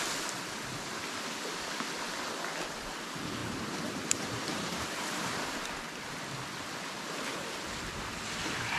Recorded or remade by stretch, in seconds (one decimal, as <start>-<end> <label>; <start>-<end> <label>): 0.0-3.4 recorded; 3.4-5.4 remade; 5.4-8.8 recorded